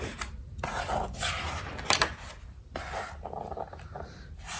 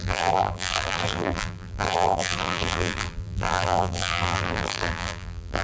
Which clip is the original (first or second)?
first